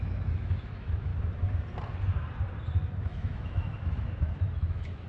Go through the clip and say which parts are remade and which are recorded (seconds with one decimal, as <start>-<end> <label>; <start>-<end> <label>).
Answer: 0.0-1.1 remade; 1.1-3.0 recorded; 3.0-5.1 remade